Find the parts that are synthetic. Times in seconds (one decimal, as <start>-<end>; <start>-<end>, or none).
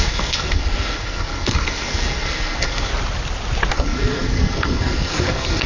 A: 0.0-2.9; 3.7-5.7